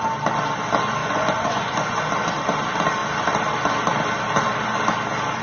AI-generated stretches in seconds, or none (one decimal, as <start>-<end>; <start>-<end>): 1.0-2.1